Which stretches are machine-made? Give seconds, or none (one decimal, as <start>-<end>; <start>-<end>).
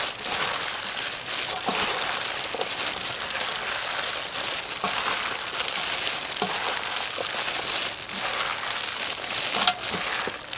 none